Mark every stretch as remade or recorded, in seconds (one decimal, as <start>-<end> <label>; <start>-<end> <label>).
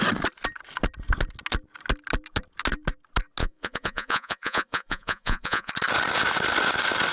0.0-3.4 recorded; 3.4-5.7 remade; 5.7-7.1 recorded